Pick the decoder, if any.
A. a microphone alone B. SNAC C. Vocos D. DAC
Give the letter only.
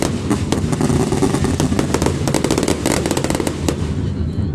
A